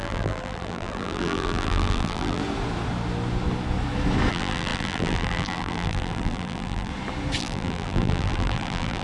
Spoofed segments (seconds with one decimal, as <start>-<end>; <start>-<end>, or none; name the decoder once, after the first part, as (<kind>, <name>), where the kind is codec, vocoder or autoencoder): 0.0-2.4 (vocoder, BigVGAN v2); 4.3-6.9; 7.4-9.0